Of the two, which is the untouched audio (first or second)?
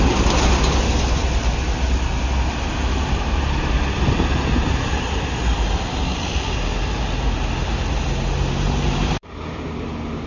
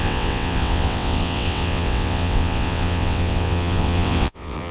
first